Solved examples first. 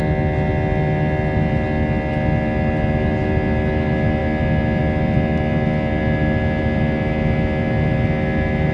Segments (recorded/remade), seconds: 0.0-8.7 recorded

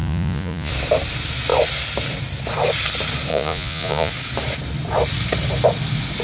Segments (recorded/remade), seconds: 0.0-0.7 remade; 0.7-3.3 recorded; 3.3-4.1 remade; 4.1-6.2 recorded

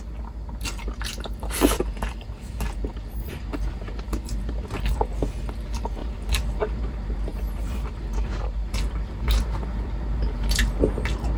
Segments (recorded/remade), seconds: 0.0-11.4 recorded

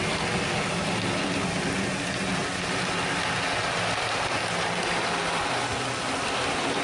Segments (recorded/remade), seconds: 0.0-6.8 recorded

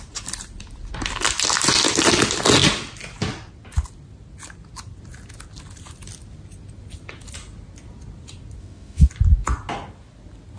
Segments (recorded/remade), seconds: 0.0-8.6 recorded; 8.6-9.1 remade; 9.1-10.6 recorded